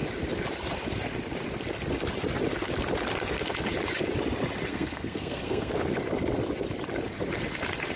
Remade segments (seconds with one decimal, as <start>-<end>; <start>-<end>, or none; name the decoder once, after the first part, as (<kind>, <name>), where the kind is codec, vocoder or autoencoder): 4.7-5.7 (codec, SNAC)